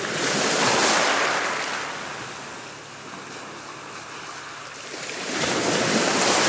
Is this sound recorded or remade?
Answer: recorded